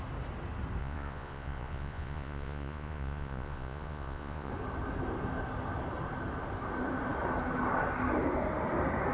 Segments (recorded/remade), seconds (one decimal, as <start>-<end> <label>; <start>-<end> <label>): 0.0-0.8 recorded; 0.8-4.5 remade; 4.5-9.1 recorded